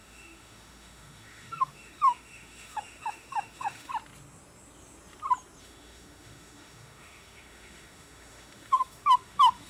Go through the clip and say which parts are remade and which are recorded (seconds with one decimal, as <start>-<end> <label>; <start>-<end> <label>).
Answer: 0.0-3.9 remade; 3.9-5.6 recorded; 5.6-9.7 remade